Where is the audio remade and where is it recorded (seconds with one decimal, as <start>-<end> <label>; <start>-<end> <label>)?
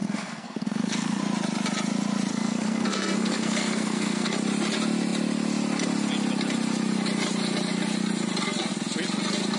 0.0-1.2 remade; 1.2-2.3 recorded; 2.3-4.3 remade; 4.3-9.6 recorded